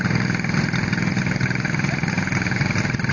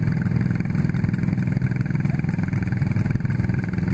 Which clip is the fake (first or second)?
second